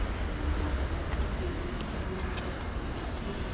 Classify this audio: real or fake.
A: real